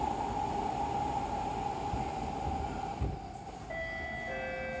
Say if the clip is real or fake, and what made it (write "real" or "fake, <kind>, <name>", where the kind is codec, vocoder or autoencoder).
real